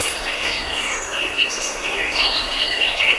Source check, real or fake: fake